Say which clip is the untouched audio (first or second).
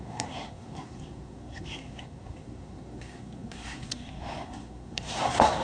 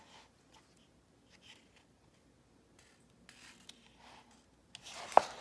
second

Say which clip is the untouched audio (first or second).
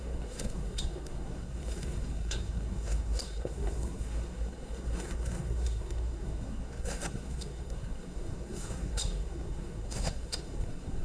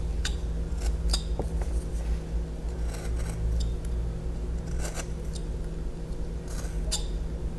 second